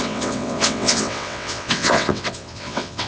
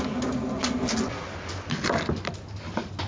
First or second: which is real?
second